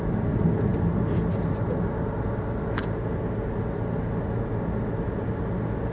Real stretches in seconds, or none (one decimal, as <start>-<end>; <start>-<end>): 0.0-5.9